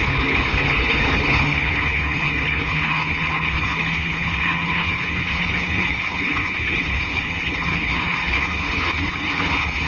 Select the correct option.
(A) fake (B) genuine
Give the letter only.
A